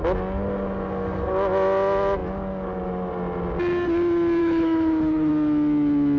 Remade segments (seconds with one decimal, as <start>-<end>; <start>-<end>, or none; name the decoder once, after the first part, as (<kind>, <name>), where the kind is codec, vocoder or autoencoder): 4.4-5.3 (codec, HILCodec)